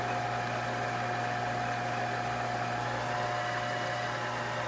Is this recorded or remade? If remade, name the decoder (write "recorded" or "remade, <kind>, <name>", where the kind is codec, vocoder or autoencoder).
recorded